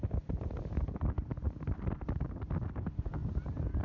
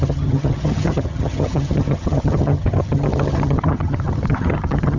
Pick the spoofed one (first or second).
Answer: second